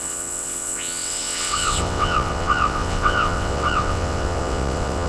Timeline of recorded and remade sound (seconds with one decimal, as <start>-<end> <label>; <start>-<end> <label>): 0.0-5.1 remade